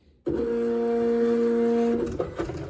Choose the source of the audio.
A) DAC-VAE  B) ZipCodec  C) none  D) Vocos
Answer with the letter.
C